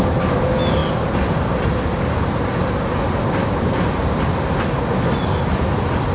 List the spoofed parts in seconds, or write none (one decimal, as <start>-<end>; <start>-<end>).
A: none